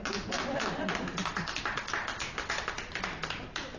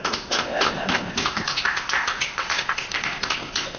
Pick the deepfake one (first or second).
second